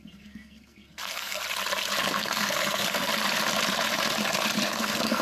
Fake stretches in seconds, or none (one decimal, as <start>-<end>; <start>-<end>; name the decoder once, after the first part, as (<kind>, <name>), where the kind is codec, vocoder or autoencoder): 0.0-1.4 (codec, SNAC); 2.0-3.1; 4.7-5.2